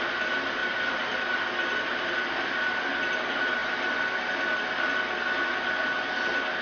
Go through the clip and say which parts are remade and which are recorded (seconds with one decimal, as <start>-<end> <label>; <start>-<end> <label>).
0.0-6.6 recorded